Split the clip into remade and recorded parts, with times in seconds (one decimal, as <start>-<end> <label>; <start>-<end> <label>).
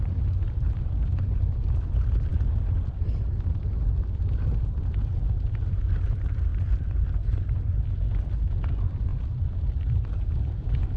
0.0-11.0 recorded